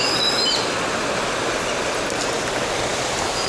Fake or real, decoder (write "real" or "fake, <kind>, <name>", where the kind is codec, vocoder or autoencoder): real